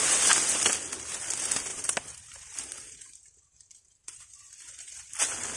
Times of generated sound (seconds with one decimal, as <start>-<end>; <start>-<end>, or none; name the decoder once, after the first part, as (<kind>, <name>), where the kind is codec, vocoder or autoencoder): 1.7-5.1 (vocoder, BigVGAN v2)